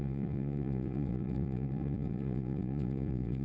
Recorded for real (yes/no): no